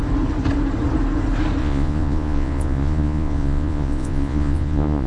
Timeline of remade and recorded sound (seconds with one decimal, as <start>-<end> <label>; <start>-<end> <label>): 0.0-1.6 recorded; 1.6-5.1 remade